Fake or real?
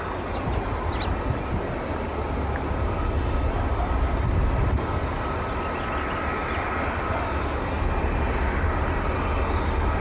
real